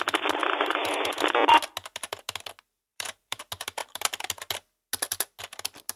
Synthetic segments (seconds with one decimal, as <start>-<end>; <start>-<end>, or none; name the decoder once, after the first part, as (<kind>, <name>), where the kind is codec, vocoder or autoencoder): 0.4-1.1 (vocoder, BigVGAN v2); 2.9-3.4